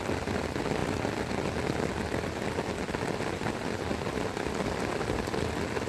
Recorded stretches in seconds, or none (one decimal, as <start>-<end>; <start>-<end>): 0.0-5.9